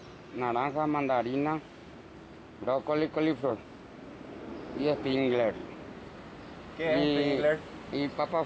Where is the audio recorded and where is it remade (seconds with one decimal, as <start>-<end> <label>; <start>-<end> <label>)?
0.0-1.8 recorded; 1.8-3.5 remade; 3.5-5.6 recorded; 5.6-6.4 remade; 6.4-8.5 recorded